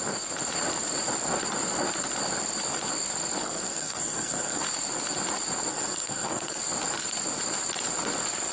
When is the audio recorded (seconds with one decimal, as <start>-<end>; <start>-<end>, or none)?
0.0-3.4; 4.6-5.7; 6.6-8.5